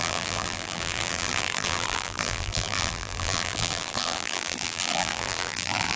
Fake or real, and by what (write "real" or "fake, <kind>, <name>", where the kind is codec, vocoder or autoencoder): fake, vocoder, BigVGAN v2